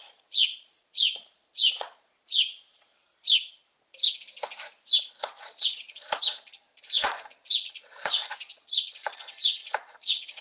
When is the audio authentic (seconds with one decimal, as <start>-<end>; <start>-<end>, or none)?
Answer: 3.1-5.2